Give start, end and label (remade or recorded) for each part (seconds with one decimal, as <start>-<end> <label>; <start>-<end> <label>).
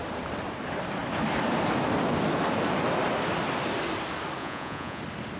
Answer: 0.0-4.4 recorded; 4.4-5.0 remade; 5.0-5.4 recorded